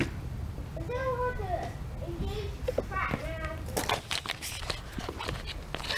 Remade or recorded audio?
recorded